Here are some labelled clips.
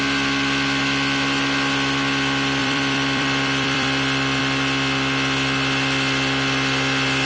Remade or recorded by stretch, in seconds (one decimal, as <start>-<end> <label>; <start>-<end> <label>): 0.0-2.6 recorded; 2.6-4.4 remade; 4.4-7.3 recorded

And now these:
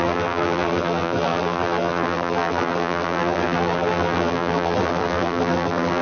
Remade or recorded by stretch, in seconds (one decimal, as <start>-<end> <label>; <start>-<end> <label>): 0.0-6.0 remade

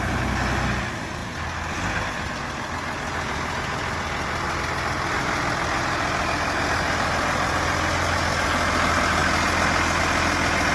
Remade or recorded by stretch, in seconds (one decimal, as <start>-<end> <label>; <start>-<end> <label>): 0.0-10.7 recorded

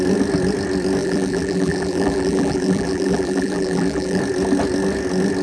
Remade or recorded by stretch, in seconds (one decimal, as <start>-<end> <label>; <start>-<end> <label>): 0.0-1.0 recorded; 1.0-4.2 remade; 4.2-5.4 recorded